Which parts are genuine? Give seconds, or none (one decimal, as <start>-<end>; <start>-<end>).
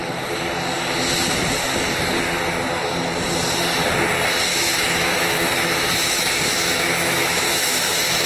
0.0-4.5